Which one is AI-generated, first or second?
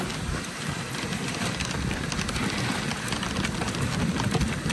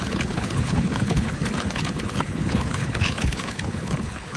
second